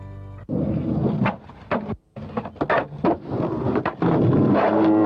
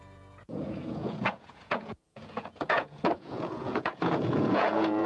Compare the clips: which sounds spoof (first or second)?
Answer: second